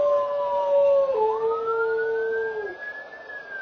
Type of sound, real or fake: real